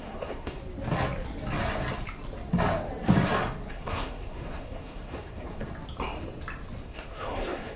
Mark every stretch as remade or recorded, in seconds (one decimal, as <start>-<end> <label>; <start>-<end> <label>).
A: 0.0-0.6 remade; 0.6-3.7 recorded; 3.7-5.7 remade; 5.7-6.8 recorded; 6.8-7.8 remade